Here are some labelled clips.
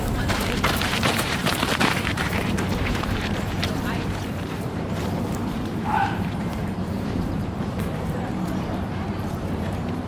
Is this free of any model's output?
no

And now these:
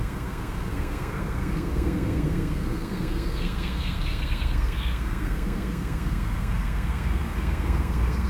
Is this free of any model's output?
no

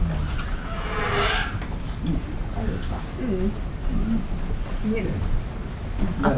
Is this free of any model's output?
yes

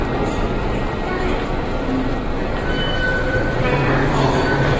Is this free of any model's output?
yes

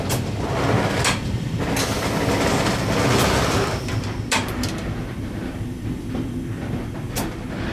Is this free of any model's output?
yes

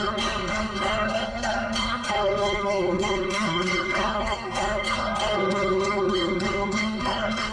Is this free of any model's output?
no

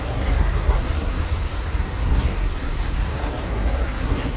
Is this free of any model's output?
no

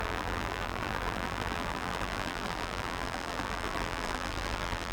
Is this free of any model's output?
no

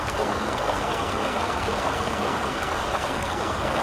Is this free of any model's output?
no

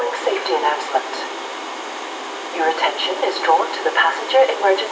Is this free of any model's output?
yes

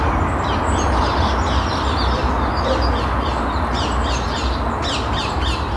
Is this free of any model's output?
yes